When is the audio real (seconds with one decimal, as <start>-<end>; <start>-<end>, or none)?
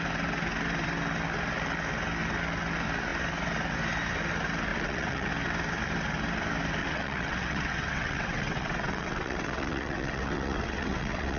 0.0-4.7; 5.3-6.8